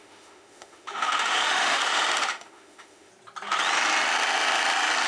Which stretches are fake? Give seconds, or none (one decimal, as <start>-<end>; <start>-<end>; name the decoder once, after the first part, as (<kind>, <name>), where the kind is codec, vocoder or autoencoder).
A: 0.0-3.1 (autoencoder, DAC-VAE)